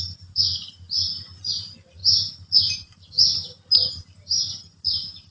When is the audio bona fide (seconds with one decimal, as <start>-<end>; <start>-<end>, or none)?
0.0-5.3